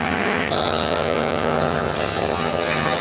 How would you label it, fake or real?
fake